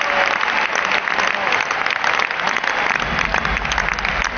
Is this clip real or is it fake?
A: real